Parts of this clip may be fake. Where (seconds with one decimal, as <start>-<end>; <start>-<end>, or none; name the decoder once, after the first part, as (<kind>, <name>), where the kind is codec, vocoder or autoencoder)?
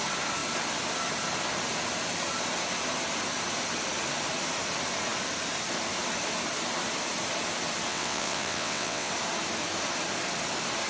7.9-9.1 (vocoder, WaveNeXt)